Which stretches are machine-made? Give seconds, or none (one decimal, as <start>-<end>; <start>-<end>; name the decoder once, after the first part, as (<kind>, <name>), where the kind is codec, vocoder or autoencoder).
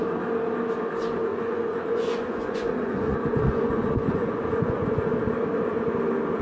1.3-5.1 (vocoder, Vocos)